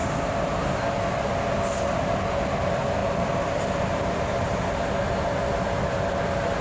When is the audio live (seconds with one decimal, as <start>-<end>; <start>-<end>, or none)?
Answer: 0.6-3.0; 3.9-6.6